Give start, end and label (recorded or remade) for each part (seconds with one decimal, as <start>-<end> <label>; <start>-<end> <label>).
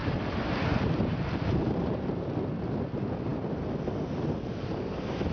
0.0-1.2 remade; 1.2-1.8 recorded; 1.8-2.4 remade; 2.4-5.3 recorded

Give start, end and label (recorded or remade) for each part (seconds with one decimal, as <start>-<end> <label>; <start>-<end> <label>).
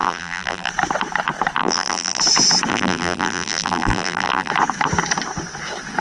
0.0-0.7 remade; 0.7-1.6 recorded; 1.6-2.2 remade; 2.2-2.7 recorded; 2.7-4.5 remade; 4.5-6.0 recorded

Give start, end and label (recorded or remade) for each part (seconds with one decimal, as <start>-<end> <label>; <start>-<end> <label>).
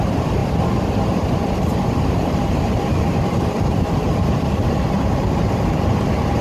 0.0-0.4 remade; 0.4-1.6 recorded; 1.6-6.4 remade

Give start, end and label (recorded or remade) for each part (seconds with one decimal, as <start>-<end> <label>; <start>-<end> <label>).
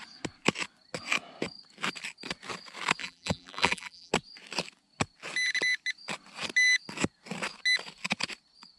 0.0-3.0 recorded; 3.0-4.1 remade; 4.1-8.8 recorded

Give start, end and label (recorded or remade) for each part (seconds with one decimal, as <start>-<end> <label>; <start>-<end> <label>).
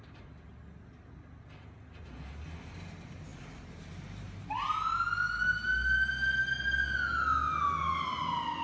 0.0-3.3 recorded; 3.3-5.1 remade; 5.1-8.6 recorded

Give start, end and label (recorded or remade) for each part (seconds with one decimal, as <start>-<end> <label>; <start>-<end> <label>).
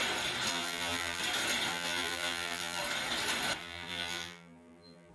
0.0-0.5 recorded; 0.5-1.2 remade; 1.2-1.7 recorded; 1.7-2.8 remade; 2.8-3.6 recorded; 3.6-5.1 remade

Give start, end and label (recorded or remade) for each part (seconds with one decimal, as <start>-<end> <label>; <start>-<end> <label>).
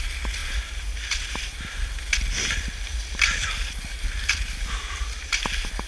0.0-5.9 recorded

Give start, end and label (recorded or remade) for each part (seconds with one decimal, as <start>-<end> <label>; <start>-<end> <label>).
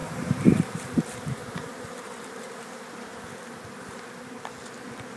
0.0-1.0 remade; 1.0-1.4 recorded; 1.4-2.4 remade; 2.4-5.2 recorded